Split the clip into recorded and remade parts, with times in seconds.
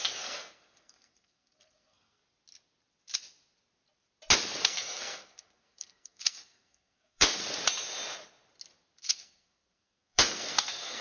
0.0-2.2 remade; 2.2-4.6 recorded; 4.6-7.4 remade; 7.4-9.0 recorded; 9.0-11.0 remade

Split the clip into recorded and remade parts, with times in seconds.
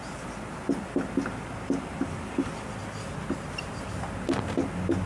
0.0-5.1 recorded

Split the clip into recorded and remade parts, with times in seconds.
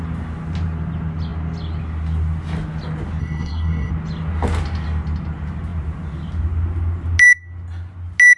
0.0-3.2 recorded; 3.2-3.9 remade; 3.9-8.4 recorded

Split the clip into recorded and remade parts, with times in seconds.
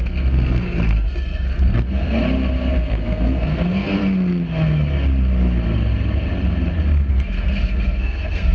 0.0-2.2 remade; 2.2-2.7 recorded; 2.7-4.0 remade; 4.0-7.1 recorded; 7.1-8.5 remade